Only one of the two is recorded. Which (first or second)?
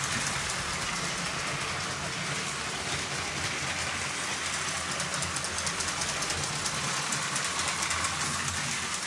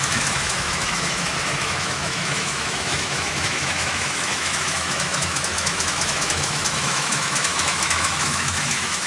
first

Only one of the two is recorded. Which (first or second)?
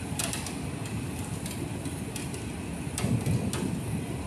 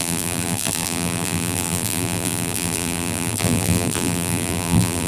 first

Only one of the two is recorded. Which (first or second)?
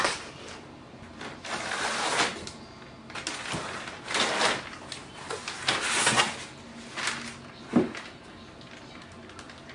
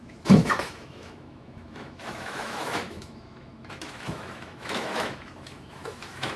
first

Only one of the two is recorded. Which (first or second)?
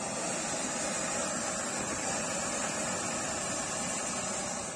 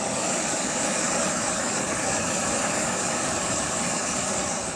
first